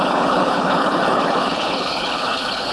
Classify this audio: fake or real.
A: fake